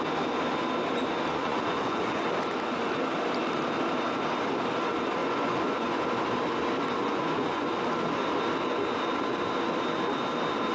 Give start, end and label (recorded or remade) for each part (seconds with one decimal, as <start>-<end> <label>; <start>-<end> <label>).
0.0-1.4 recorded; 1.4-2.2 remade; 2.2-5.2 recorded; 5.2-6.0 remade; 6.0-7.0 recorded; 7.0-7.7 remade; 7.7-10.7 recorded